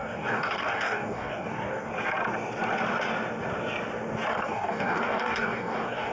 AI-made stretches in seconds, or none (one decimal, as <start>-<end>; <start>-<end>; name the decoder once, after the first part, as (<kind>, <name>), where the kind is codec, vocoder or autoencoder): 0.0-1.9 (codec, DAC); 4.3-6.1